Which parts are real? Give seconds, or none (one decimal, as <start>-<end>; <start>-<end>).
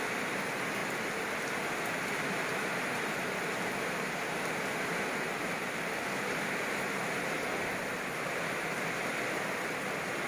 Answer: 0.0-10.3